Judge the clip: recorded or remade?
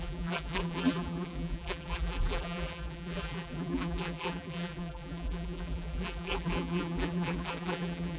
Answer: remade